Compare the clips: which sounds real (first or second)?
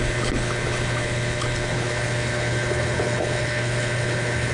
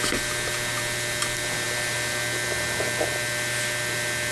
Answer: second